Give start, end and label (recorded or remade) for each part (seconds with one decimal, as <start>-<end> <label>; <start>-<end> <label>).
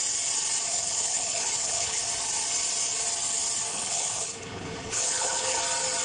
0.0-0.7 recorded; 0.7-2.0 remade; 2.0-3.7 recorded; 3.7-5.6 remade; 5.6-6.0 recorded